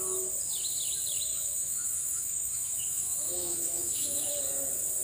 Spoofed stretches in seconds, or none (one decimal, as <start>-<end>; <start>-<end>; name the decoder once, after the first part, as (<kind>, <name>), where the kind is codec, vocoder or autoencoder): 1.3-4.3 (autoencoder, DAC-VAE)